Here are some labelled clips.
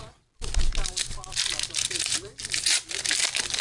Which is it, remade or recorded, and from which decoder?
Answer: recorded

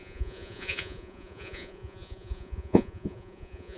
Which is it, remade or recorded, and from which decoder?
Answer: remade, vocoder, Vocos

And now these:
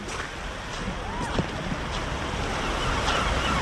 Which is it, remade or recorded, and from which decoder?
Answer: recorded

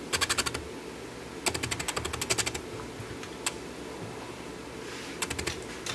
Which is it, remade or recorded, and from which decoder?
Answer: recorded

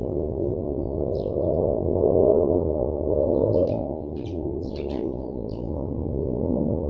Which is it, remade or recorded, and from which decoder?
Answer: remade, vocoder, Vocos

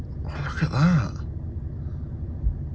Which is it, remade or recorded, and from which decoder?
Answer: recorded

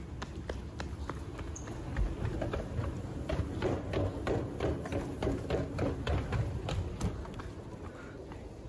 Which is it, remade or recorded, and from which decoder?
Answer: recorded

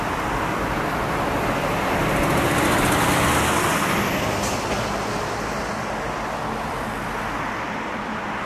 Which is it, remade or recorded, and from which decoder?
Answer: recorded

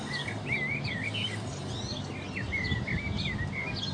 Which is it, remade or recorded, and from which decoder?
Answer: recorded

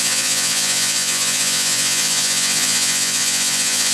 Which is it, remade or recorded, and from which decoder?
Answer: remade, vocoder, Vocos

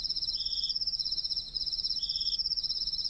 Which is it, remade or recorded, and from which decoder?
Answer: remade, vocoder, Vocos